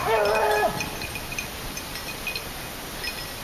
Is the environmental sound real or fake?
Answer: real